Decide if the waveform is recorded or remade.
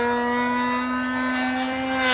recorded